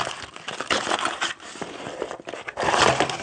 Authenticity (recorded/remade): recorded